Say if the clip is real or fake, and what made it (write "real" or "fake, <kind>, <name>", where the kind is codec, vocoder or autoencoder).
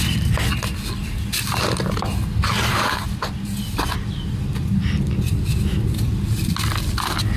real